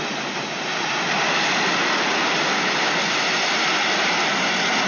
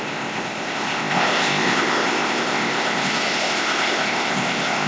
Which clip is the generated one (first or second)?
second